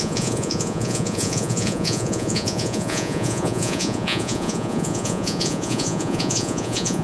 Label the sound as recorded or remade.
remade